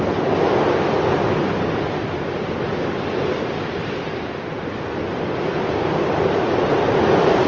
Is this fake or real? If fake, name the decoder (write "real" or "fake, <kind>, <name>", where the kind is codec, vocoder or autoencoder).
real